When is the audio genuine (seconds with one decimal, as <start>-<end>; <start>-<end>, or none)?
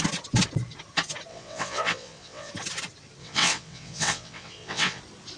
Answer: 0.0-1.3; 2.5-3.2; 5.0-5.4